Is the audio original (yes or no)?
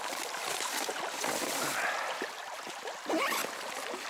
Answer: yes